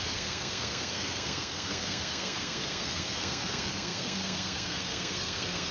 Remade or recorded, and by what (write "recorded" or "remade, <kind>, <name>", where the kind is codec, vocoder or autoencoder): remade, codec, SNAC